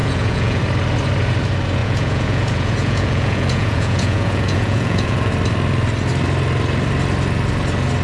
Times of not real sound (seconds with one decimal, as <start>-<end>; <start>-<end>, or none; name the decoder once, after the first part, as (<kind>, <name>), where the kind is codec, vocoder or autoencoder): 0.0-0.6 (vocoder, Vocos); 1.8-5.3